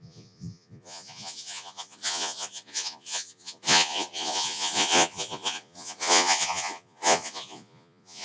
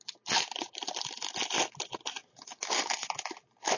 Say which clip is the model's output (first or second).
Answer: first